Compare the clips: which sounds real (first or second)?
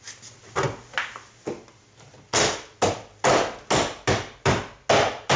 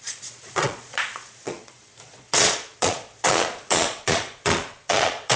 first